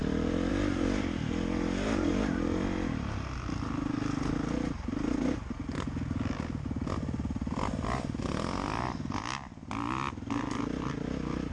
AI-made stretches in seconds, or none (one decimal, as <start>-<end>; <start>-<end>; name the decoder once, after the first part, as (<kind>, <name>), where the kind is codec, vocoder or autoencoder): none